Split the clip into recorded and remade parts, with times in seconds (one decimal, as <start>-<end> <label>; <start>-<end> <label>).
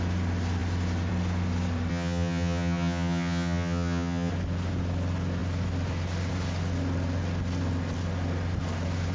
0.0-1.9 recorded; 1.9-4.3 remade; 4.3-9.1 recorded